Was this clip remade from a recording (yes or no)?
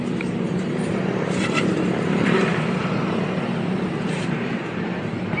yes